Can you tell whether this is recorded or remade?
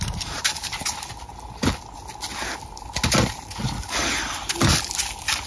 recorded